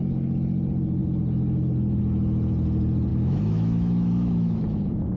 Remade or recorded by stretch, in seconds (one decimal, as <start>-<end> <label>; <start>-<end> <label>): 0.0-3.1 recorded; 3.1-4.6 remade; 4.6-5.2 recorded